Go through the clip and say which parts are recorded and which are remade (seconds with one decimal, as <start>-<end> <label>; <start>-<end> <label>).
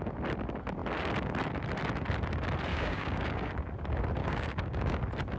0.0-2.7 recorded; 2.7-3.5 remade; 3.5-4.2 recorded; 4.2-5.0 remade; 5.0-5.4 recorded